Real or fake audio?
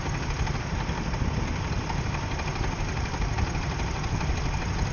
real